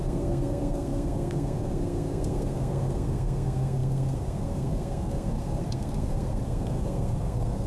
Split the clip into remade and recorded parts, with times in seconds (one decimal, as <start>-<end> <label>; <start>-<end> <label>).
0.0-7.7 remade